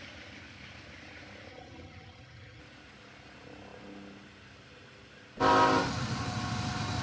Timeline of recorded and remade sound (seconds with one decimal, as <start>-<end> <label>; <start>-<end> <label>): 0.0-1.5 recorded; 1.5-2.6 remade; 2.6-7.0 recorded